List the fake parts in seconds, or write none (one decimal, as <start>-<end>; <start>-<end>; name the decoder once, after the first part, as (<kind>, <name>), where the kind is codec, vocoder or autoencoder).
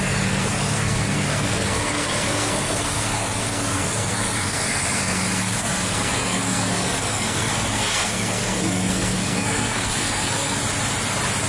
0.0-10.6 (codec, SNAC)